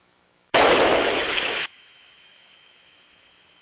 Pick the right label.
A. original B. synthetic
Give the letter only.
B